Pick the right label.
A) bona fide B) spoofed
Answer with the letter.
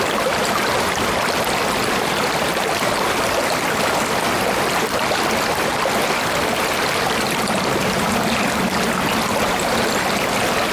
A